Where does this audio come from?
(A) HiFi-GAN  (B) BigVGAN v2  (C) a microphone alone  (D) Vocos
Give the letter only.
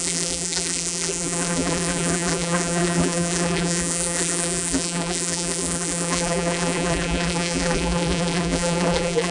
B